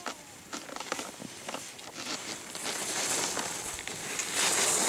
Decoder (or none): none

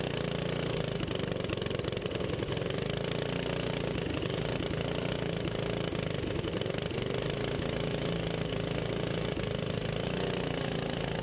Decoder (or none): none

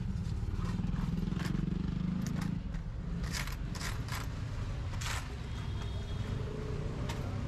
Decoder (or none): none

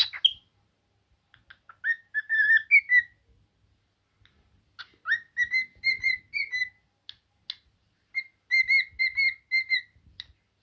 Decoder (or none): none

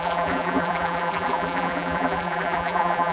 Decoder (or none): vocoder, BigVGAN v2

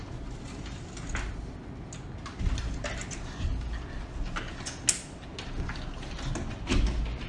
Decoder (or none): none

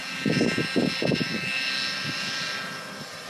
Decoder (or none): none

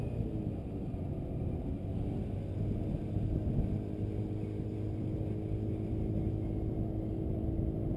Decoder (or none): none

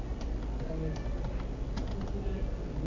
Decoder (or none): none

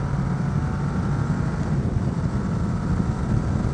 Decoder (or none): none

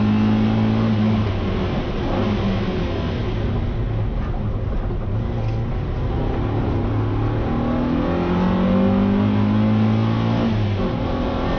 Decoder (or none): none